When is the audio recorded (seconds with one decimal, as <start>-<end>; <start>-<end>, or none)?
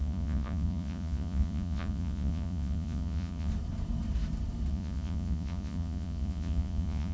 3.5-4.7